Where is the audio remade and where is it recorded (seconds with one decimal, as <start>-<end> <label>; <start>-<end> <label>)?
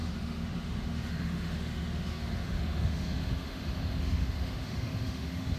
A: 0.0-5.6 remade